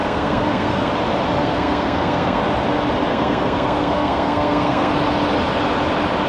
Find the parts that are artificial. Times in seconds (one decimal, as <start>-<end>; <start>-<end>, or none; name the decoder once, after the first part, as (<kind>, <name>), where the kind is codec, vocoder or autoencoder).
0.0-0.9 (codec, SNAC); 1.4-2.4; 3.1-4.9

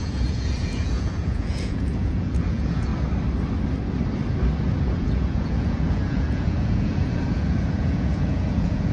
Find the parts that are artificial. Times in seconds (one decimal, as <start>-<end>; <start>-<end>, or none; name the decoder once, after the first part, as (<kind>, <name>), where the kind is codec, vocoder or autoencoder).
0.0-2.9 (vocoder, Vocos); 4.8-8.9

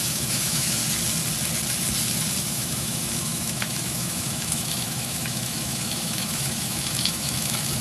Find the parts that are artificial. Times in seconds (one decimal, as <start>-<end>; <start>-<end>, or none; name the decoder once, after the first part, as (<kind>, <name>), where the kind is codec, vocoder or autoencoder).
0.0-0.8 (autoencoder, DAC-VAE); 2.4-7.8

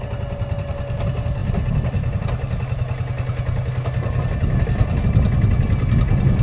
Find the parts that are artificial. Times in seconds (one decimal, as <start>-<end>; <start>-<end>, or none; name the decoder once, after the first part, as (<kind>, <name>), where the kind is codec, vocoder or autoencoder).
none

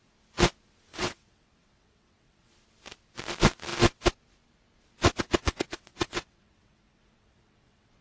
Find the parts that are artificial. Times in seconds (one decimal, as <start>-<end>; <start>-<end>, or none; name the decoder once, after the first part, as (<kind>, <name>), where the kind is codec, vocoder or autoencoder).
0.9-2.5 (vocoder, WaveNeXt); 5.2-8.0

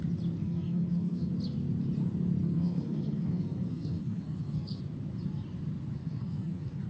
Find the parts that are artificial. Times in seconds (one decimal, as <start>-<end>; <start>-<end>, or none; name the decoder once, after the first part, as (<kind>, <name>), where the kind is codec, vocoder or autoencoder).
0.4-1.3 (codec, SNAC); 2.4-4.8; 6.0-6.9

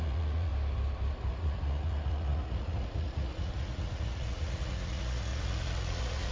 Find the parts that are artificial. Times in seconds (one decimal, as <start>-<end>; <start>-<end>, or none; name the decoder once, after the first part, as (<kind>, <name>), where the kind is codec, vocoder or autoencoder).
0.0-0.5 (vocoder, Vocos); 1.3-6.3